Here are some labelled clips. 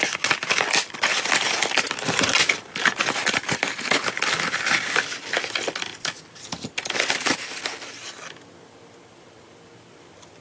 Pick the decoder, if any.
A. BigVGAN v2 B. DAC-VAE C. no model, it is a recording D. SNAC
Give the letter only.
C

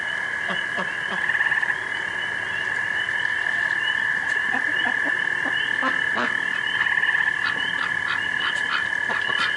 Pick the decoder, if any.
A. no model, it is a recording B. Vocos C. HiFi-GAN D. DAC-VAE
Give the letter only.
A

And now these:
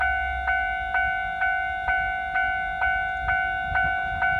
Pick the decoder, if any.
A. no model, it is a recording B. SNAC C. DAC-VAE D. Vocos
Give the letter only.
A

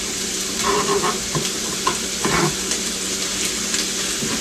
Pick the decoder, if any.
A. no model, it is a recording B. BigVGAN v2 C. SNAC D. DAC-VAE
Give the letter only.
A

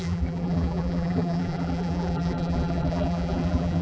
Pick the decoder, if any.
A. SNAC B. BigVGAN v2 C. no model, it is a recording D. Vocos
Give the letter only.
B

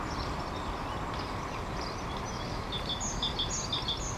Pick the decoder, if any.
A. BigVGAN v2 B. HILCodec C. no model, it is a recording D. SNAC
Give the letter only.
C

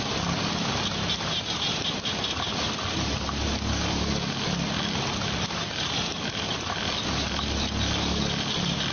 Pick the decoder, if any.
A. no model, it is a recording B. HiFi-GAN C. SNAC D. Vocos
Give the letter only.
A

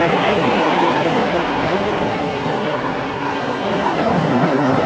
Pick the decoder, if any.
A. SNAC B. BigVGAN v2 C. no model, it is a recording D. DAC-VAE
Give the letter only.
A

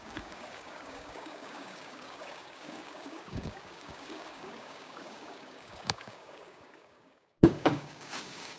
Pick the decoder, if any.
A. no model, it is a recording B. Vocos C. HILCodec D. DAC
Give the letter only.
D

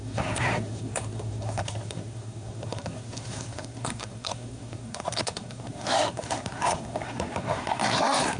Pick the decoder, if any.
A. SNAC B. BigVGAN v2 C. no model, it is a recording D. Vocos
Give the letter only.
A